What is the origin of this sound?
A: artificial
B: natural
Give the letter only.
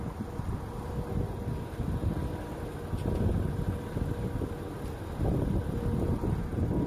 B